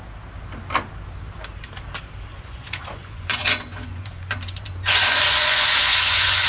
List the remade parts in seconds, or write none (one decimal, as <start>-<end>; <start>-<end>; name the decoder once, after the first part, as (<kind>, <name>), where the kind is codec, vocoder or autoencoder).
2.3-6.5 (vocoder, Vocos)

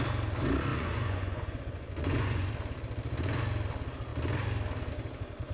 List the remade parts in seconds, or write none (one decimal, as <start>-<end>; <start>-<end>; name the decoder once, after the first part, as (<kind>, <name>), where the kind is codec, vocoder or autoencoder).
0.7-2.5 (vocoder, Vocos)

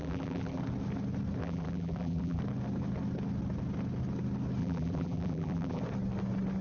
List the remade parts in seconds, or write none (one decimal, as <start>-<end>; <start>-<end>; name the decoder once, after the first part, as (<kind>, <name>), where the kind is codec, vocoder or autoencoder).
0.0-0.6 (vocoder, BigVGAN v2); 1.4-2.4; 4.6-5.8